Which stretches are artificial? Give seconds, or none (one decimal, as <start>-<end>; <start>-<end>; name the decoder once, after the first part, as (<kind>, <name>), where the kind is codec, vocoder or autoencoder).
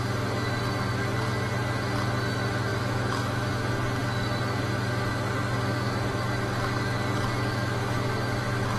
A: 2.7-3.5 (autoencoder, DAC-VAE); 7.5-8.8